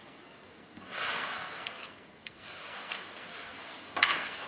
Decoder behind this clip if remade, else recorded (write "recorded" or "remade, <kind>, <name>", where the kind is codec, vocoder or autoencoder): remade, codec, SNAC